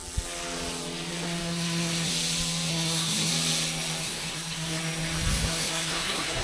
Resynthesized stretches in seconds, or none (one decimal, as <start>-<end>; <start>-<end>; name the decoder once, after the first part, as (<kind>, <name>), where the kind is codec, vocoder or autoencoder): 1.4-2.1 (codec, SNAC); 2.7-3.3; 4.0-4.8; 5.3-6.4